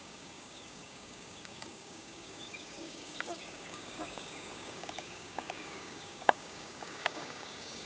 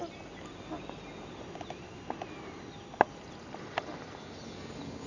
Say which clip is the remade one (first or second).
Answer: first